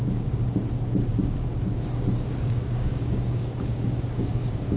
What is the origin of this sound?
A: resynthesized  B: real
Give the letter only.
A